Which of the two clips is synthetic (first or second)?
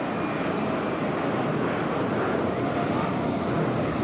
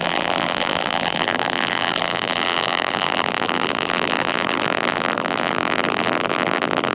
second